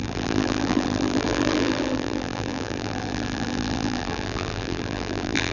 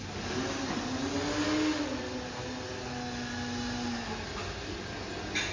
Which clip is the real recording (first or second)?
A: second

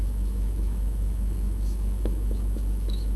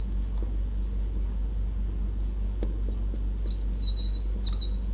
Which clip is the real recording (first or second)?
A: second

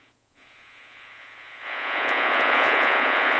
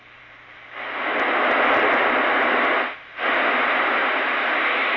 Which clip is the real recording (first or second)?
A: second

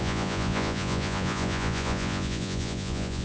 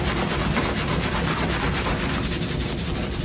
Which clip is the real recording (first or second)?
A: second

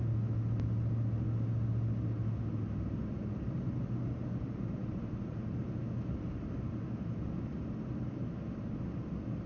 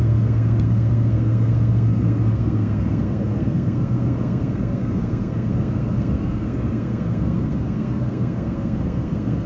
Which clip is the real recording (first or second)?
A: first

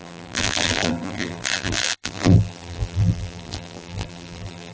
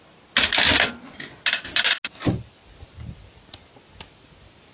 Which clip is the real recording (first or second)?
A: second